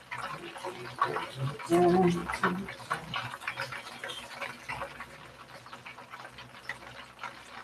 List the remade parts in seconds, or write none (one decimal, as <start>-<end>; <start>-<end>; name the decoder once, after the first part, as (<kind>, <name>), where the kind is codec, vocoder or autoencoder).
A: none